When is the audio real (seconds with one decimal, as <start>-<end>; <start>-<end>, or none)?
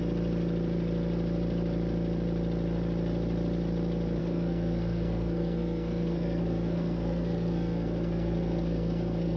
0.0-4.2